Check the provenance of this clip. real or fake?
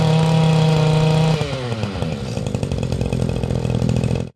real